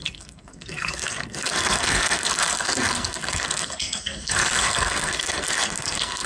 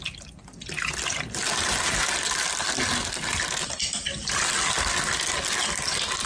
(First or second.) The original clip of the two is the second